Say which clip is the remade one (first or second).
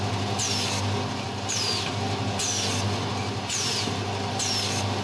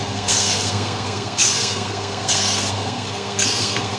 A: second